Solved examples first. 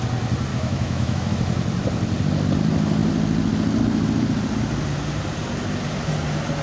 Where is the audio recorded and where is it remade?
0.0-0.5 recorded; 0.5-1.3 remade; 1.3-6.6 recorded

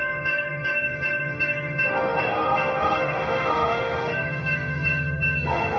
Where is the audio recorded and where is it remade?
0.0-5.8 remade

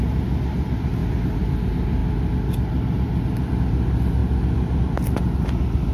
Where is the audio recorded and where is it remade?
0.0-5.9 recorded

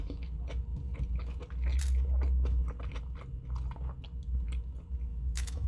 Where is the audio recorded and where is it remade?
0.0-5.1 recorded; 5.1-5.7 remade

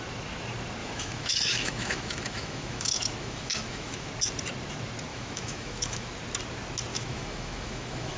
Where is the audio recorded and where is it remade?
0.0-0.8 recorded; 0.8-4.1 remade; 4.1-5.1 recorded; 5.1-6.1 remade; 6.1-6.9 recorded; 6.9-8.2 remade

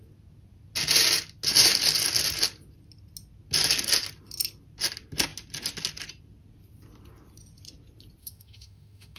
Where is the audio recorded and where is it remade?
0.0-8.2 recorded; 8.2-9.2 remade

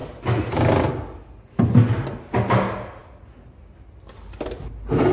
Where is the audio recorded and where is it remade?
0.0-5.1 recorded

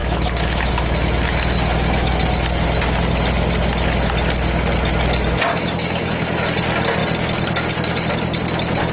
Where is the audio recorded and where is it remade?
0.0-2.1 remade; 2.1-5.5 recorded; 5.5-6.4 remade; 6.4-8.9 recorded